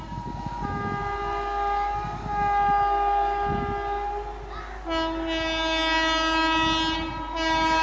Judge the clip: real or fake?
real